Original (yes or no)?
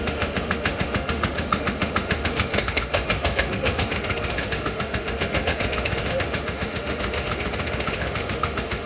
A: no